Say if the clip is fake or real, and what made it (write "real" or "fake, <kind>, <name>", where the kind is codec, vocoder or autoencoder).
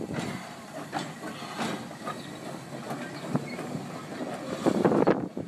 real